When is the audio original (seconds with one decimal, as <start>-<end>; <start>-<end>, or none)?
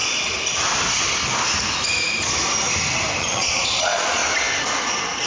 0.0-3.2; 4.2-5.3